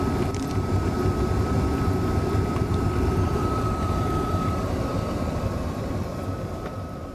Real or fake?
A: fake